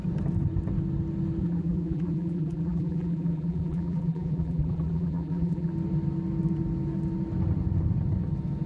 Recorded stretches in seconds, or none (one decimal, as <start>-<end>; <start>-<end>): 0.0-1.4; 5.7-8.7